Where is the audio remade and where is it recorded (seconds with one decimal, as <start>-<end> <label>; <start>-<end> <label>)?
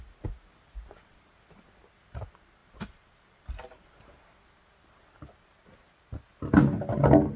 0.0-7.4 recorded